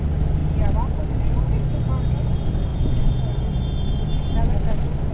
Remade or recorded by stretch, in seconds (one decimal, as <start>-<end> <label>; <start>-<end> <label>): 0.0-2.7 recorded; 2.7-4.0 remade; 4.0-5.1 recorded